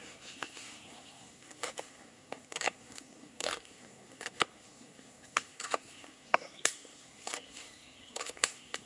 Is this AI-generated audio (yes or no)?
yes